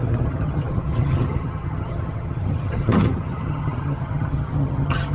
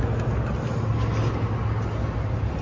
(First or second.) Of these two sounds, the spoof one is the first